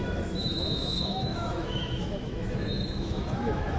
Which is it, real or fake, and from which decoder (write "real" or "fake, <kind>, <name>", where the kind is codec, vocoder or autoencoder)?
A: fake, autoencoder, DAC-VAE